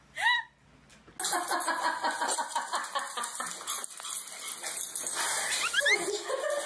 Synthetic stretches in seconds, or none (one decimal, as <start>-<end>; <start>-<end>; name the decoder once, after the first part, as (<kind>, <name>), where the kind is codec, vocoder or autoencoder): none